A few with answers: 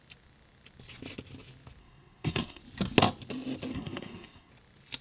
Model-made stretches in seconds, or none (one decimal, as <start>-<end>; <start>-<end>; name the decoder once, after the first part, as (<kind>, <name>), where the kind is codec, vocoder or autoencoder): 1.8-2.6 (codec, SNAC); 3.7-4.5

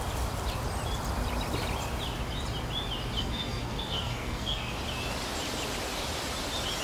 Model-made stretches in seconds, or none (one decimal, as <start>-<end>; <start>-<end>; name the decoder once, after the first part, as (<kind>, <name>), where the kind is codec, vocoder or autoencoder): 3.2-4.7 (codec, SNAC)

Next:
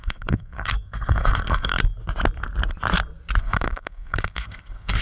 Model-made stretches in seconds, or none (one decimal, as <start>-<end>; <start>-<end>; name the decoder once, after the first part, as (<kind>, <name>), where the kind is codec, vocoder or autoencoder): 0.0-1.8 (codec, SNAC); 3.4-5.0